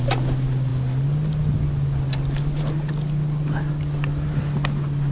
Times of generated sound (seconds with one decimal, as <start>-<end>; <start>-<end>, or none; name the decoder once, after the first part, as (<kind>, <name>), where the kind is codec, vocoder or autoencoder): none